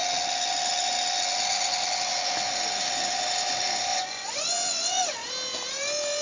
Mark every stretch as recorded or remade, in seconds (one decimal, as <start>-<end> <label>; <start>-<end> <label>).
0.0-3.9 recorded; 3.9-5.0 remade; 5.0-6.2 recorded